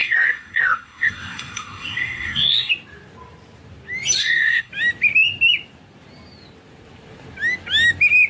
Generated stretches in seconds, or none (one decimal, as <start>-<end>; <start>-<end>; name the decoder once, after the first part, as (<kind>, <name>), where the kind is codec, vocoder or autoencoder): 0.0-2.7 (codec, SNAC); 4.2-4.7